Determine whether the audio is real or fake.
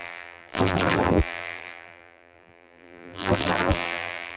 fake